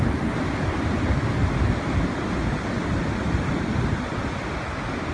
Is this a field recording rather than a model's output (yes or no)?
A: yes